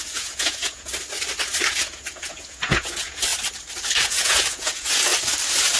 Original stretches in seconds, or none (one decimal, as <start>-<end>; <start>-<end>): 0.9-1.7; 3.3-3.9; 5.1-5.8